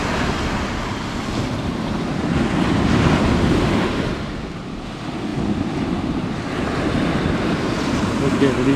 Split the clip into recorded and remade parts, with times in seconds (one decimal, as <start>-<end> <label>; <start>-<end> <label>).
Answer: 0.0-8.8 recorded